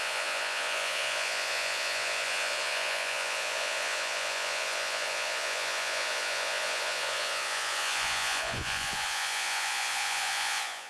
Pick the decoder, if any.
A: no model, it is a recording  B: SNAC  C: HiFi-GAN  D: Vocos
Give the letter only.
D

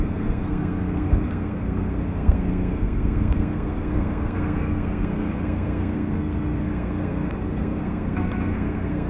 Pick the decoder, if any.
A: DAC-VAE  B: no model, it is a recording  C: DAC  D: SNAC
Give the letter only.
D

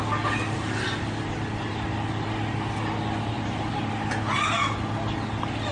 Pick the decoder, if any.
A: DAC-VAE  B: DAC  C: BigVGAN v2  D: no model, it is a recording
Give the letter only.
D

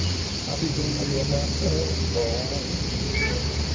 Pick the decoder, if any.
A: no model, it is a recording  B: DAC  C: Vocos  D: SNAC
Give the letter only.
A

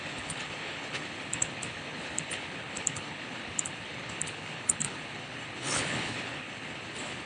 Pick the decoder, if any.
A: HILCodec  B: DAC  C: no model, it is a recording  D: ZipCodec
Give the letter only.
A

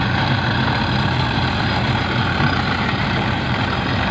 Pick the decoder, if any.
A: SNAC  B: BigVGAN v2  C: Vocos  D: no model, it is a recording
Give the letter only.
B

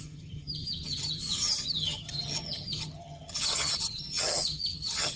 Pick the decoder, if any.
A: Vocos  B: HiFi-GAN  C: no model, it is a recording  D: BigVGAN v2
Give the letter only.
B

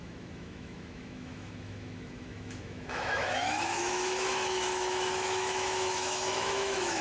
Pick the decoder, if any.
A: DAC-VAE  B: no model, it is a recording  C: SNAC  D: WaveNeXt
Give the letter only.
A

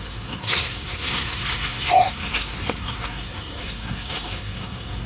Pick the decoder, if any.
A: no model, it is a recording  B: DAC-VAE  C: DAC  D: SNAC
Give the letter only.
D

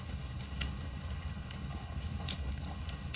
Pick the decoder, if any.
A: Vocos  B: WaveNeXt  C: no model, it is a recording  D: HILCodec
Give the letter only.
D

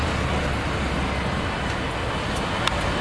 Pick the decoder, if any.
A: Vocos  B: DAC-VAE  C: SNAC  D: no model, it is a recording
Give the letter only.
D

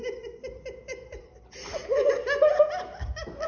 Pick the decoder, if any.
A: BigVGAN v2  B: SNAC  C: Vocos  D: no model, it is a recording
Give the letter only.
D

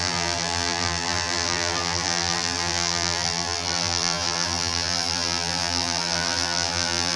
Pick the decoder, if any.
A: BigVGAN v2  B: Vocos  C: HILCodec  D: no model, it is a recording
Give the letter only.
A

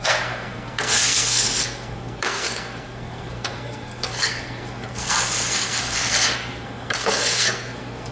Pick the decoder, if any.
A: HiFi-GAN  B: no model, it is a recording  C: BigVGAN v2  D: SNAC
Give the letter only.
D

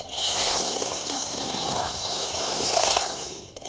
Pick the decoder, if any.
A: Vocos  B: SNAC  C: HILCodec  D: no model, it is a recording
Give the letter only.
B